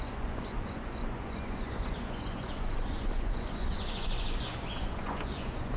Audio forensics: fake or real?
fake